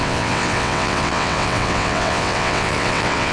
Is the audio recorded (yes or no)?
no